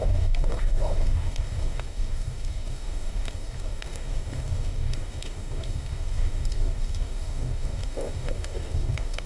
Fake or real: fake